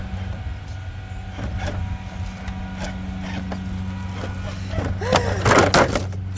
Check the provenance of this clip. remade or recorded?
recorded